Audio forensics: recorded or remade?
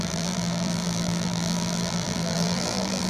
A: remade